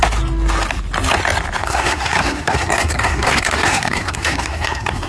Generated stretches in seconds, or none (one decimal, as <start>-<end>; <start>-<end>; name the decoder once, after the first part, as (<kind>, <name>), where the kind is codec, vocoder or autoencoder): 1.6-5.1 (codec, SNAC)